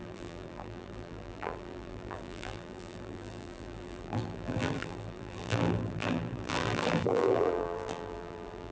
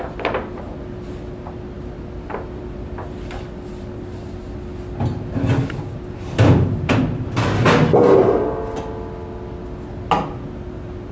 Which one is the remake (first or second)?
first